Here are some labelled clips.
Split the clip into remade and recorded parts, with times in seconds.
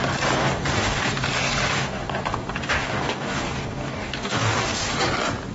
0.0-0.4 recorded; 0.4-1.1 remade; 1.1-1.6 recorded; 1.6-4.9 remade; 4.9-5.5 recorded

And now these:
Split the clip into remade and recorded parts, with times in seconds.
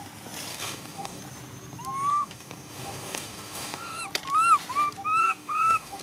0.0-0.5 recorded; 0.5-1.2 remade; 1.2-2.1 recorded; 2.1-4.0 remade; 4.0-5.2 recorded; 5.2-6.0 remade